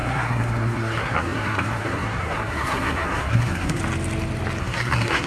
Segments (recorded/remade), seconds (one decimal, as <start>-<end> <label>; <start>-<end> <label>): 0.0-3.8 remade; 3.8-4.6 recorded; 4.6-5.3 remade